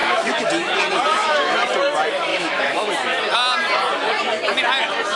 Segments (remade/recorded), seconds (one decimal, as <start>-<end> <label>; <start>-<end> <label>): 0.0-0.5 remade; 0.5-1.2 recorded; 1.2-1.7 remade; 1.7-2.3 recorded; 2.3-2.9 remade; 2.9-5.2 recorded